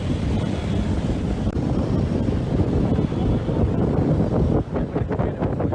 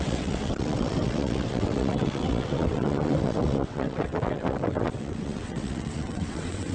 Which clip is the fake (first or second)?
second